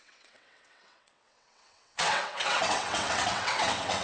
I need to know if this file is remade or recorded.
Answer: remade